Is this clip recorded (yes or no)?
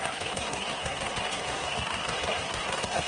no